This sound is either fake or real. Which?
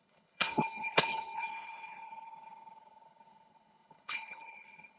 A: fake